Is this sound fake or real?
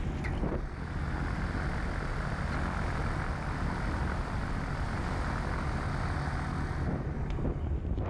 real